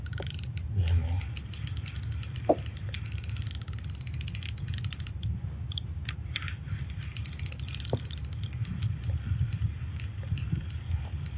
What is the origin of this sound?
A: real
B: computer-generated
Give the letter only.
A